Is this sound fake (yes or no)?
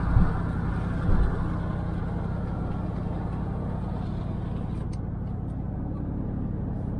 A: no